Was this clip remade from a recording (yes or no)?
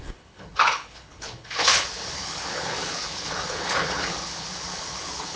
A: yes